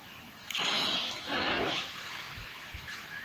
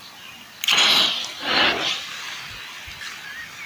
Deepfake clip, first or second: first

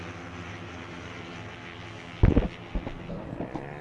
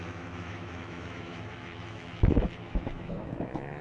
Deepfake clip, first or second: second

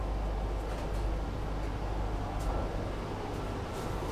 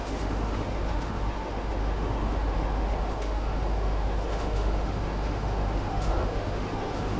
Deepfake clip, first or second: second